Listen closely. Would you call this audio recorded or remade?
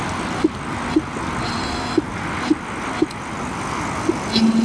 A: recorded